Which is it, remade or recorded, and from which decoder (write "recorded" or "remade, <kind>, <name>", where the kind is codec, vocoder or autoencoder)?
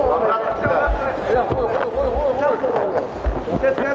recorded